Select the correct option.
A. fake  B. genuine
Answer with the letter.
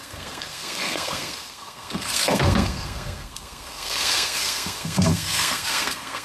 A